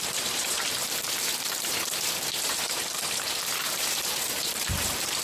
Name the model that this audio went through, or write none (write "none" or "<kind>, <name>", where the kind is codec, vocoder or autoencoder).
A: vocoder, BigVGAN v2